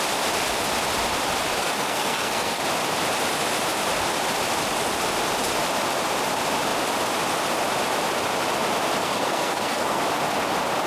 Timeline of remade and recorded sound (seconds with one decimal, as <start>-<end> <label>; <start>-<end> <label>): 0.0-1.6 recorded; 1.6-2.6 remade; 2.6-9.0 recorded; 9.0-10.0 remade; 10.0-10.9 recorded